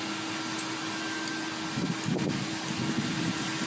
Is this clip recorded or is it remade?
recorded